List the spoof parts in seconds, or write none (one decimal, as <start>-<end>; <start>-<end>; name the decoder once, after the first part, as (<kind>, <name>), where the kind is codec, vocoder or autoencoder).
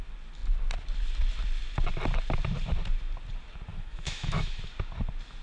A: 3.7-4.6 (autoencoder, DAC-VAE)